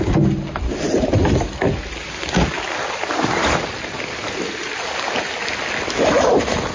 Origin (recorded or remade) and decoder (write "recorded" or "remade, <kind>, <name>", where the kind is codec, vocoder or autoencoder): recorded